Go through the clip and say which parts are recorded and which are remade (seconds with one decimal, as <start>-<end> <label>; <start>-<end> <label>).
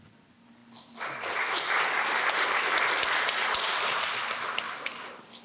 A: 0.0-5.4 recorded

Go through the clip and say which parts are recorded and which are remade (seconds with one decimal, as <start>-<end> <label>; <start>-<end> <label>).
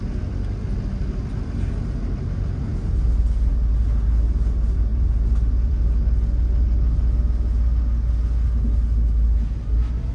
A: 0.0-4.9 recorded; 4.9-5.7 remade; 5.7-10.1 recorded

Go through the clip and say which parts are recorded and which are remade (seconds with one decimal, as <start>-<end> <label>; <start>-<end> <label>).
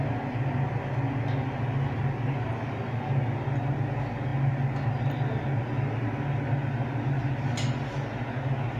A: 0.0-8.8 recorded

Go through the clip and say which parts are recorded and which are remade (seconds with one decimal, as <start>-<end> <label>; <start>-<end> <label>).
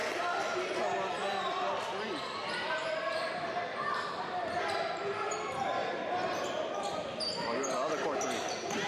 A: 0.0-4.6 remade; 4.6-5.8 recorded; 5.8-6.8 remade; 6.8-8.9 recorded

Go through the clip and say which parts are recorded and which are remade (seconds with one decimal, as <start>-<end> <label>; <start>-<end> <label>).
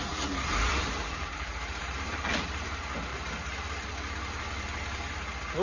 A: 0.0-0.7 recorded; 0.7-2.6 remade; 2.6-3.1 recorded; 3.1-3.9 remade; 3.9-5.6 recorded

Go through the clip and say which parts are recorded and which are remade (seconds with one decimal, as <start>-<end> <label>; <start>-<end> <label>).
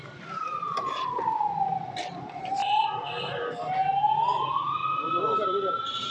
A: 0.0-2.6 recorded; 2.6-3.7 remade; 3.7-4.8 recorded; 4.8-6.1 remade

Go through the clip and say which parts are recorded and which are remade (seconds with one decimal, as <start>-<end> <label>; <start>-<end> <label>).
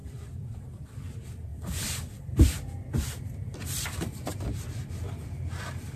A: 0.0-0.6 remade; 0.6-1.5 recorded; 1.5-5.1 remade; 5.1-6.0 recorded